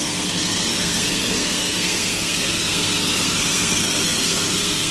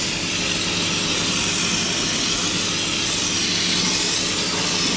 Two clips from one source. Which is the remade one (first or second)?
first